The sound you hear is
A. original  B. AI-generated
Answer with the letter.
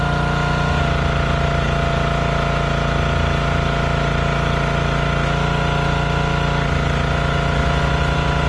A